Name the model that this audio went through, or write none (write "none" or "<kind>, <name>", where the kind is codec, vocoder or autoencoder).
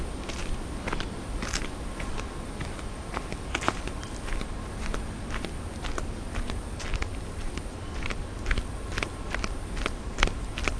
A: none